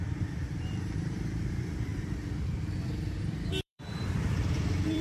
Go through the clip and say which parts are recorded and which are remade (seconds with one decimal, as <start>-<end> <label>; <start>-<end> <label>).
0.0-5.0 remade